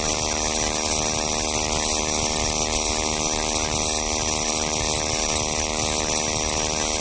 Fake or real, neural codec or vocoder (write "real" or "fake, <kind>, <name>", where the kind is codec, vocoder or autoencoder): real